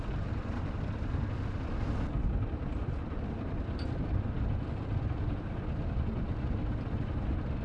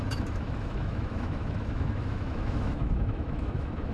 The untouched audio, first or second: first